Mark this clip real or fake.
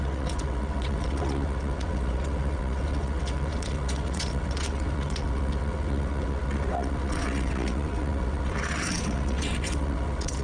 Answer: fake